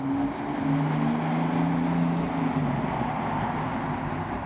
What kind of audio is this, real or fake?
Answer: real